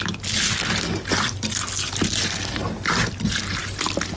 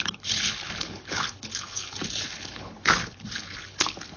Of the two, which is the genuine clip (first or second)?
first